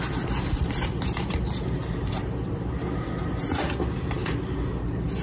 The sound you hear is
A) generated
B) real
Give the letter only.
B